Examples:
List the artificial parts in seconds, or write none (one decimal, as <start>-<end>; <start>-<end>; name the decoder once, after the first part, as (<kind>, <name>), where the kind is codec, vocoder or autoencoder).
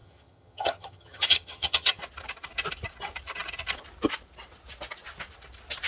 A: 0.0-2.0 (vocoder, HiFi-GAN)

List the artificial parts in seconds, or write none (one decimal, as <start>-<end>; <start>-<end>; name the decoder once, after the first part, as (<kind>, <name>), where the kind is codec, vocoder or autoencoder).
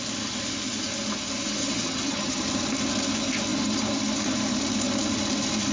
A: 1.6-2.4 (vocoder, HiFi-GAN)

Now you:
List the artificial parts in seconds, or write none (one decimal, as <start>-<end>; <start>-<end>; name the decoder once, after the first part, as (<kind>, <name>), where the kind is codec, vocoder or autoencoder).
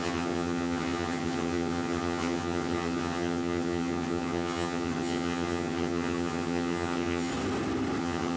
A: 0.0-7.3 (vocoder, HiFi-GAN); 8.0-8.4